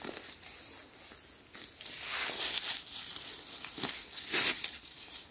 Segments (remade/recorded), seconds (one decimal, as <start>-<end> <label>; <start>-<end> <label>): 0.0-0.8 remade; 0.8-4.0 recorded; 4.0-5.3 remade

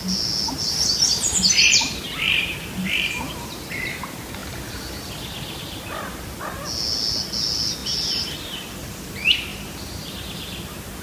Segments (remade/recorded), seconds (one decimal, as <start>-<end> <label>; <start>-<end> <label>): 0.0-4.4 recorded; 4.4-5.6 remade; 5.6-7.8 recorded; 7.8-9.1 remade; 9.1-9.5 recorded; 9.5-10.1 remade; 10.1-11.0 recorded

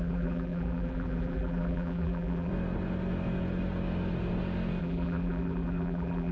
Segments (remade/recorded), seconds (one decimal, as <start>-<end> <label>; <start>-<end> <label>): 0.0-2.5 remade; 2.5-4.8 recorded; 4.8-6.3 remade

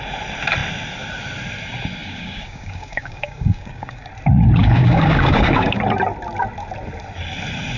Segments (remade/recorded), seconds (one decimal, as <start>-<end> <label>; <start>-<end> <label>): 0.0-2.0 recorded; 2.0-4.1 remade; 4.1-4.6 recorded; 4.6-5.8 remade; 5.8-7.8 recorded

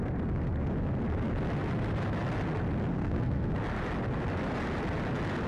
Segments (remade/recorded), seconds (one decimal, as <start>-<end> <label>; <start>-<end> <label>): 0.0-2.9 recorded; 2.9-3.5 remade; 3.5-5.5 recorded

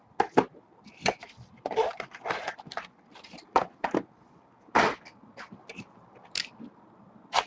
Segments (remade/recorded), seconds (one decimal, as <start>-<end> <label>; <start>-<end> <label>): 0.0-7.5 recorded